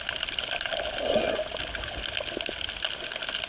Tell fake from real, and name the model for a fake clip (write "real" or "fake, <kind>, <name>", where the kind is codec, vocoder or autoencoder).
real